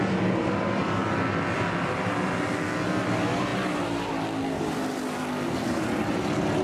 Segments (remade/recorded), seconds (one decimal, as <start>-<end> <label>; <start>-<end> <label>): 0.0-6.6 recorded